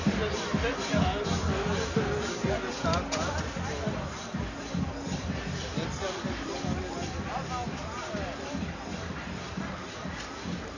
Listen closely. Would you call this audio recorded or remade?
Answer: recorded